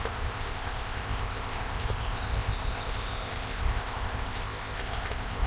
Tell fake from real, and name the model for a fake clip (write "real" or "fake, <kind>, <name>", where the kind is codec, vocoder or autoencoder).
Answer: fake, codec, ZipCodec